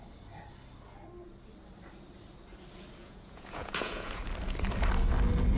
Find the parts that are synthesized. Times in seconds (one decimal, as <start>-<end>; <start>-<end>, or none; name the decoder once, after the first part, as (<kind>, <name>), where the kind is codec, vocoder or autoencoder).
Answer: 3.0-4.2 (vocoder, Vocos)